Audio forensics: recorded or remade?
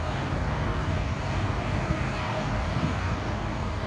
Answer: remade